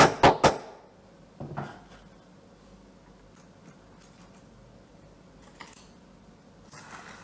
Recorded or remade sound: recorded